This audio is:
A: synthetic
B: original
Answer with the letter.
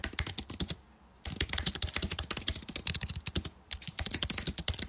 B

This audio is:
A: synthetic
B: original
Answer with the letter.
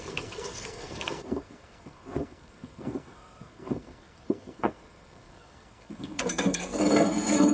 A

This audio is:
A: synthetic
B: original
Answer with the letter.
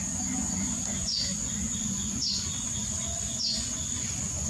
A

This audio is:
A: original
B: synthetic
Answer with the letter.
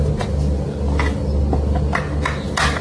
A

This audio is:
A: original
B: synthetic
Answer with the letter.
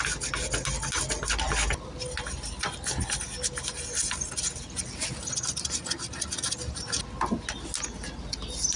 A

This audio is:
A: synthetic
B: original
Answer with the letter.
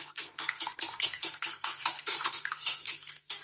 A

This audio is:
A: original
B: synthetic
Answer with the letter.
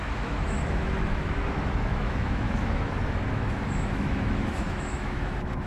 B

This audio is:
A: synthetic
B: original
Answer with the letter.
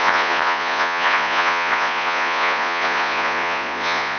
A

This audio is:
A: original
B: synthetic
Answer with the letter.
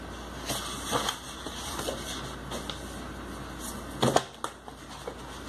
A